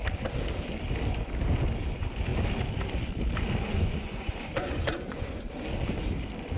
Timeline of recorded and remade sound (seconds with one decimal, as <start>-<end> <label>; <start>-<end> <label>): 0.0-3.7 recorded; 3.7-5.4 remade; 5.4-6.6 recorded